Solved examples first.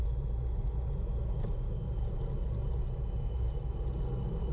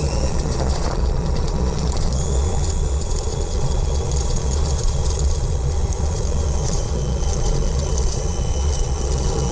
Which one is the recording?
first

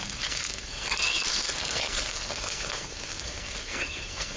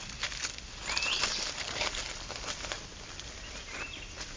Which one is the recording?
second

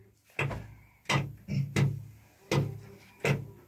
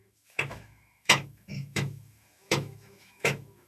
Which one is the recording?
first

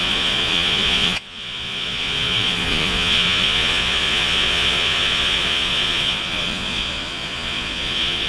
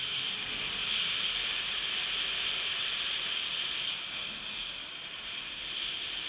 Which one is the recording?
second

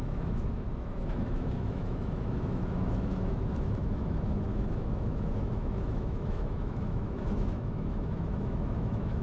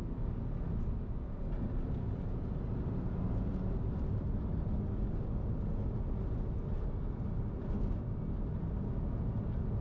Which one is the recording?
second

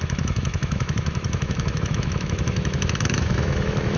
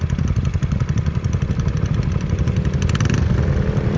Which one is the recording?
second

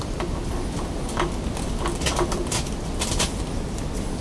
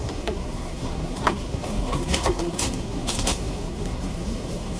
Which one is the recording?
first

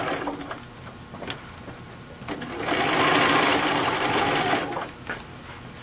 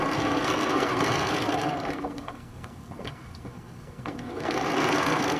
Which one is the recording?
first